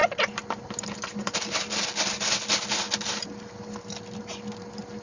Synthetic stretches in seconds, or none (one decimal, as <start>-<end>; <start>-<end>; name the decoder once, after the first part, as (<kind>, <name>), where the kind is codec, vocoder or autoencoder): none